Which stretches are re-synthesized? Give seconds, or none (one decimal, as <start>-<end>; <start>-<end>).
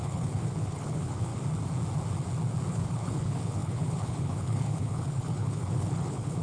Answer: 0.0-1.3; 2.7-6.4